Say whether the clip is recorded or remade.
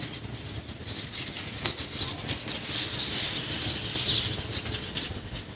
recorded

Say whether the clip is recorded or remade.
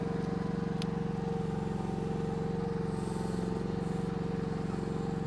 recorded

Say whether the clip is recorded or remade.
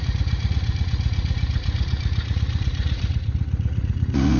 remade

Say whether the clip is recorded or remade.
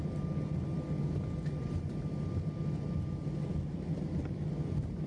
recorded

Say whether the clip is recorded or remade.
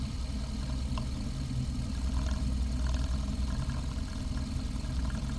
recorded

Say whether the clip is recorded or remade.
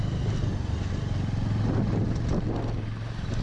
recorded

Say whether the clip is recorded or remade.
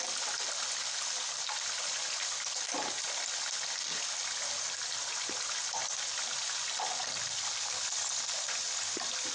recorded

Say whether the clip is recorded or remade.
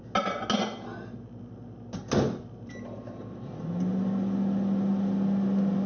recorded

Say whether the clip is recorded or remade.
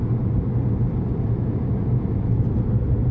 recorded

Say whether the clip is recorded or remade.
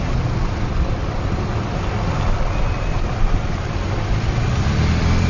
recorded